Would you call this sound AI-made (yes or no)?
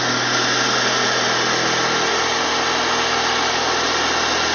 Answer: no